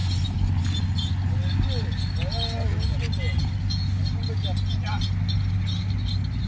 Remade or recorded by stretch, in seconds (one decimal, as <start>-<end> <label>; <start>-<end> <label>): 0.0-6.5 recorded